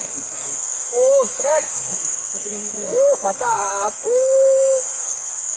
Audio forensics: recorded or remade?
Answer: remade